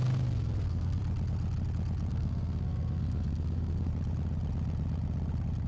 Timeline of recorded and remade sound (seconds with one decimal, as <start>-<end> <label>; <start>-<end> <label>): 0.0-1.0 remade; 1.0-2.1 recorded; 2.1-3.9 remade; 3.9-5.7 recorded